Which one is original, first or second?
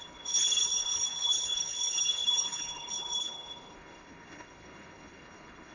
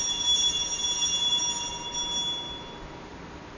second